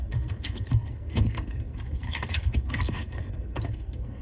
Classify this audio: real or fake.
fake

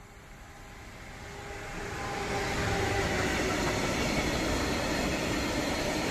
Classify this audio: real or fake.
real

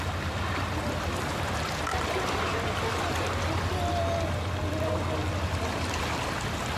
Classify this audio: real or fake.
real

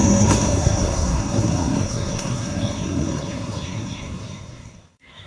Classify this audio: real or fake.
fake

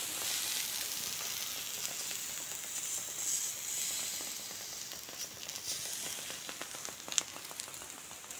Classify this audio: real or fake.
real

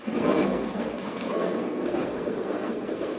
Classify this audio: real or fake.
fake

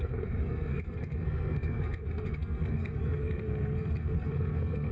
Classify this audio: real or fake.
fake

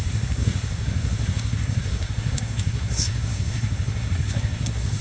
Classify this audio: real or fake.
fake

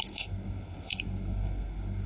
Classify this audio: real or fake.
fake